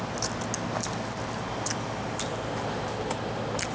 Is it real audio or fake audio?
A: real